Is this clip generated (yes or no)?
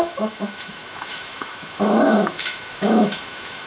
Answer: yes